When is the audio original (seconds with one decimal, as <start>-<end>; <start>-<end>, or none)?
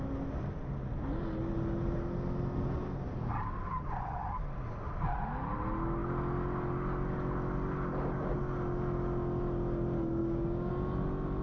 0.0-10.2; 10.7-11.4